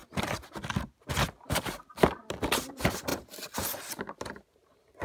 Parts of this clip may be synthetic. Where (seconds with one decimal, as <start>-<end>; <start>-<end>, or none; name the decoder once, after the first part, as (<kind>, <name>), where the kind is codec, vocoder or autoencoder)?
none